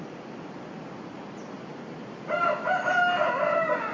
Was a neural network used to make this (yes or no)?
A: no